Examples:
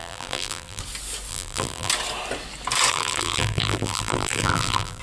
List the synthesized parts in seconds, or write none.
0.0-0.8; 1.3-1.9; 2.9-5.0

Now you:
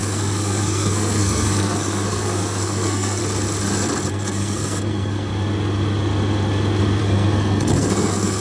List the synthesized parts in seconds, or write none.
0.0-3.2; 4.1-5.3; 7.0-8.4

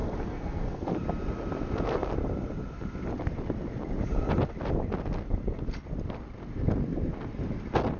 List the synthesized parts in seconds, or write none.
0.0-0.9

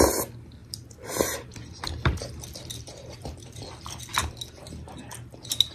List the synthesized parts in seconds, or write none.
0.6-2.3; 2.9-3.7

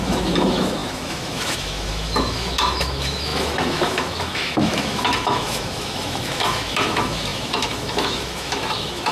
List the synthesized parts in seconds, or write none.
0.0-9.1

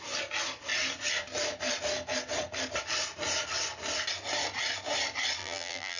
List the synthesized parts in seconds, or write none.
5.4-6.0